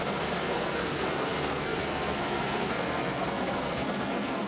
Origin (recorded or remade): remade